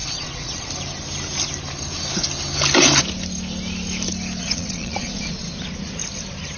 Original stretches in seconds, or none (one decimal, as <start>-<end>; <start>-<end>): 0.7-4.4; 5.3-6.6